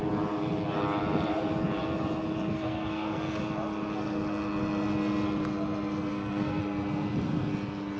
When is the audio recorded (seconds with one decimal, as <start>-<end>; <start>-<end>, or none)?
0.0-2.5; 3.4-6.1; 6.6-8.0

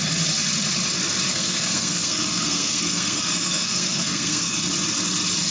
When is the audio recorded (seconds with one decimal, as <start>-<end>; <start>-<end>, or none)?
0.0-1.3; 4.6-5.5

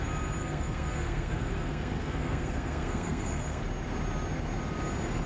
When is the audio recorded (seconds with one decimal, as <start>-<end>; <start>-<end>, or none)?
0.0-0.4; 3.6-5.3